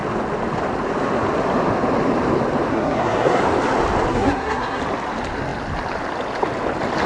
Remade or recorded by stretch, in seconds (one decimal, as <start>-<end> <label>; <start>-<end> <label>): 0.0-2.7 recorded; 2.7-3.4 remade; 3.4-4.1 recorded; 4.1-4.8 remade; 4.8-7.1 recorded